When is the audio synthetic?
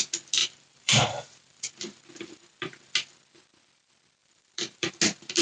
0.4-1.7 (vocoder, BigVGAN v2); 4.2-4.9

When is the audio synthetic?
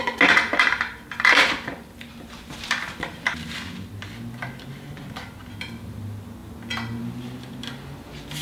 none